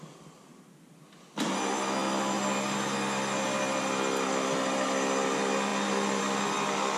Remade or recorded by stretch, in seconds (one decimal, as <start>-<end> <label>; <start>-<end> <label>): 0.0-7.0 recorded

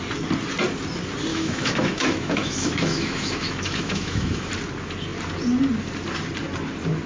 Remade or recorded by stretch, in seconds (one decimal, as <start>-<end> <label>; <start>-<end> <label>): 0.0-1.3 recorded; 1.3-4.5 remade; 4.5-7.1 recorded